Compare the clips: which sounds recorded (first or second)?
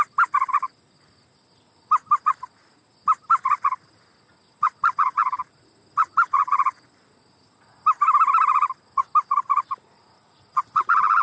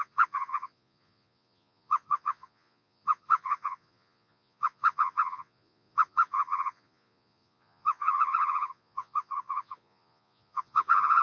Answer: first